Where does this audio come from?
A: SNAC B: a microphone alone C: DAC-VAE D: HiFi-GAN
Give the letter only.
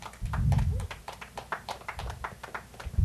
B